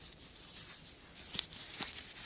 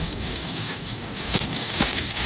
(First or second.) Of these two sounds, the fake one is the second